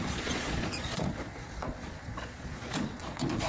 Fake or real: fake